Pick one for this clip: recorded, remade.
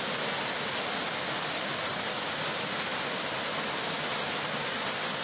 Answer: recorded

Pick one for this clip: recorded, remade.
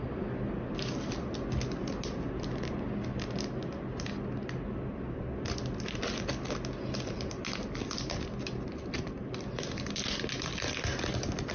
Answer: recorded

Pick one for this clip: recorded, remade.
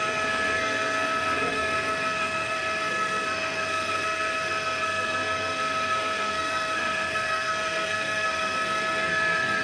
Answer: remade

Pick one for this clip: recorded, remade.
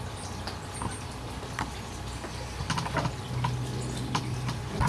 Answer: recorded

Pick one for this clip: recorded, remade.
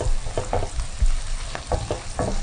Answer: recorded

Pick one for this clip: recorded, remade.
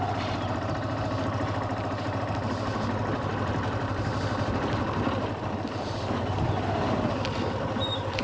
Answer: recorded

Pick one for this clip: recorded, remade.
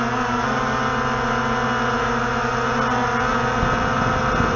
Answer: recorded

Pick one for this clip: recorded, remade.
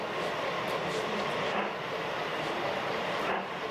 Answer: remade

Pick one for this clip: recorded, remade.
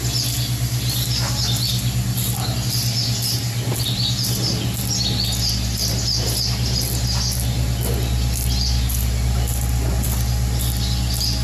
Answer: recorded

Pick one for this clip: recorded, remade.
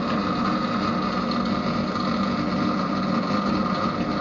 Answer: recorded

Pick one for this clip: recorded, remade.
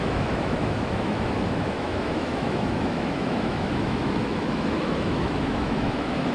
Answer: remade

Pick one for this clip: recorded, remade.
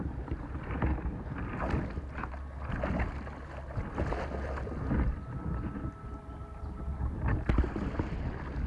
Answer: recorded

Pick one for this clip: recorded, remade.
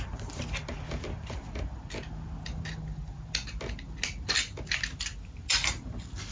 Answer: recorded